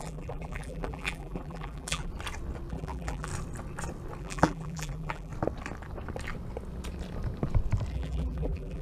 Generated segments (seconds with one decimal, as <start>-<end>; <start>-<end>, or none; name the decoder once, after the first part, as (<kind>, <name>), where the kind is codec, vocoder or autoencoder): 0.0-2.1 (vocoder, BigVGAN v2); 2.7-3.3; 4.2-5.3; 7.9-8.8